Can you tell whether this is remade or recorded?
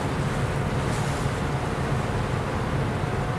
recorded